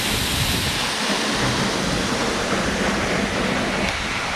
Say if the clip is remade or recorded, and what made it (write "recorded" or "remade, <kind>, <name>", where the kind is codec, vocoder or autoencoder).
recorded